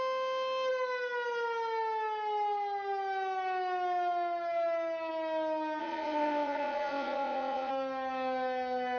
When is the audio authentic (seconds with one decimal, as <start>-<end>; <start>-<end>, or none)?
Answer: 0.0-5.8; 7.7-9.0